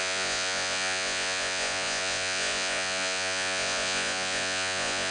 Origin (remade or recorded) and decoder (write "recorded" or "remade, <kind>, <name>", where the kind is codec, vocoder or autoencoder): remade, vocoder, Vocos